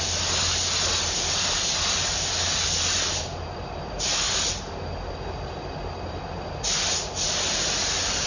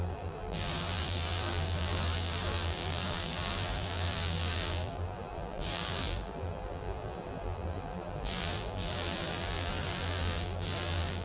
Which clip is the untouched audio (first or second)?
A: first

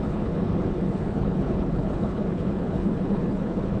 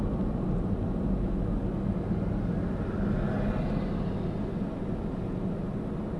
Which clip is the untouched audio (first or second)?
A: second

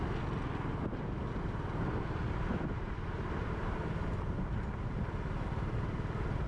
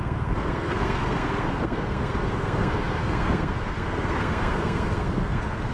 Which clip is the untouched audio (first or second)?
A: first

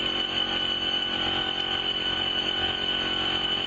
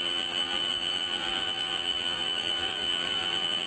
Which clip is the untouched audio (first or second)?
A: first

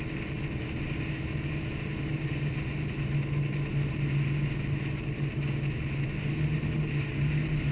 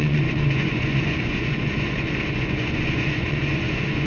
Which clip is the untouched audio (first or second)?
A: first